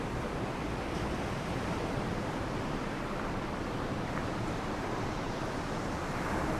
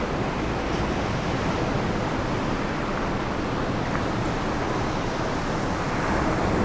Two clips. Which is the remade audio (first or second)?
first